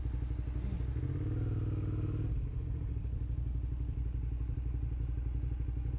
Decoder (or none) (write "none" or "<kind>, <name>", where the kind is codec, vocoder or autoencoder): none